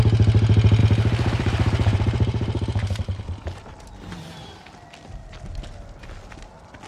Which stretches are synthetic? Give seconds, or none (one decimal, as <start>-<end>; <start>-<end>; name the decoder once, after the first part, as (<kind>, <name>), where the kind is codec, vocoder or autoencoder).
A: 0.8-3.2 (vocoder, BigVGAN v2)